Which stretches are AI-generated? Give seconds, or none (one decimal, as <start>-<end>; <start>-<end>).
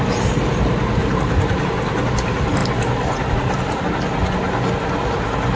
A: 1.0-1.6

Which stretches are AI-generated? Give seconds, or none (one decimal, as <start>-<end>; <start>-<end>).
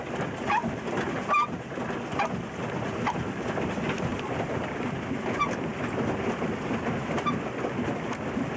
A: 4.1-4.9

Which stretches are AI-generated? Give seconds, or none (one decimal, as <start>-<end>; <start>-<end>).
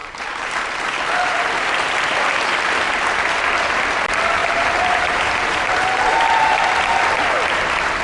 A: 4.4-6.6